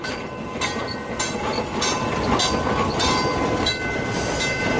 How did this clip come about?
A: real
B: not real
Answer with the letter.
A